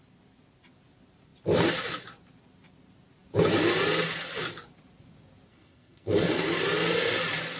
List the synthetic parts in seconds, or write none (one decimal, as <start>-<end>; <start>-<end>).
5.5-6.5